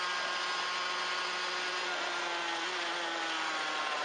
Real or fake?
real